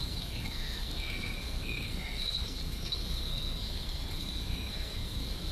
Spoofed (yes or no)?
yes